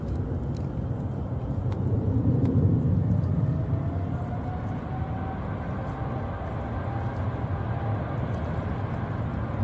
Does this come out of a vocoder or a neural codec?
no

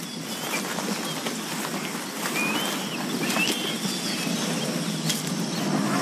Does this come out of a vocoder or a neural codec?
no